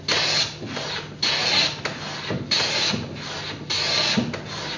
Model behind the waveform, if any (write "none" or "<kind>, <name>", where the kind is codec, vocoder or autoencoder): none